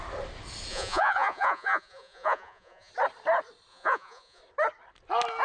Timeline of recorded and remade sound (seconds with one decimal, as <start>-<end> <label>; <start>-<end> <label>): 0.0-0.7 recorded; 0.7-2.9 remade; 2.9-3.7 recorded; 3.7-4.4 remade; 4.4-5.4 recorded